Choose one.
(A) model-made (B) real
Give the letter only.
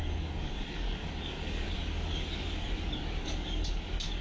A